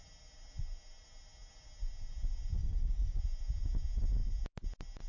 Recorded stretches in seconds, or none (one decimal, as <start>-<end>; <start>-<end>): 0.0-2.6; 3.2-5.1